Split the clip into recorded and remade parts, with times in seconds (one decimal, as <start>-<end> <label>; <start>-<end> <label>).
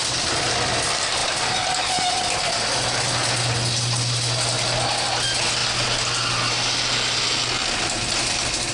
0.0-8.7 recorded